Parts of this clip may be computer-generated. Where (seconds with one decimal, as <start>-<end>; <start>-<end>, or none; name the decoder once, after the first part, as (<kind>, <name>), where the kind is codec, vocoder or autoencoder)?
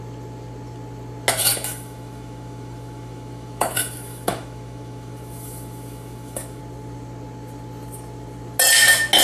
1.4-6.6 (autoencoder, DAC-VAE)